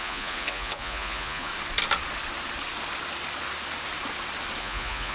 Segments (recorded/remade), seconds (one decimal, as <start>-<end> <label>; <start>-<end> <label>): 0.0-1.5 remade; 1.5-4.6 recorded; 4.6-5.1 remade